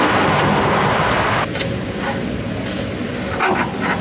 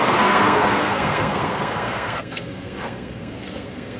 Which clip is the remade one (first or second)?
second